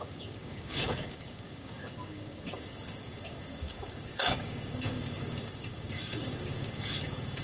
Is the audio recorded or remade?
remade